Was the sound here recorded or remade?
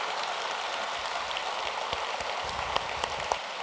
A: recorded